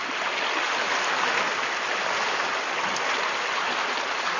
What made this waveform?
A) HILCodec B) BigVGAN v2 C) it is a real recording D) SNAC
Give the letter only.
C